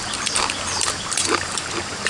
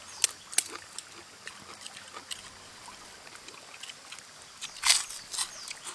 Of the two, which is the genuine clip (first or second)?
second